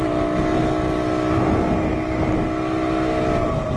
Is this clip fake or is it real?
real